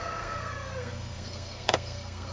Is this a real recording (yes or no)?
no